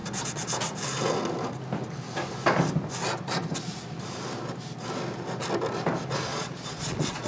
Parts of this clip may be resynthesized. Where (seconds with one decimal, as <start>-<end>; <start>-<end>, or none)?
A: 6.3-7.3